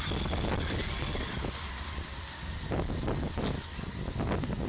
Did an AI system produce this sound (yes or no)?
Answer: no